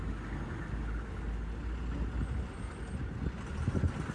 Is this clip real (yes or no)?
yes